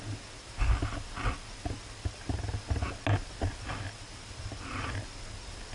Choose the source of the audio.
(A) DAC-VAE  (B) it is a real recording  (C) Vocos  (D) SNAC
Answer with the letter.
B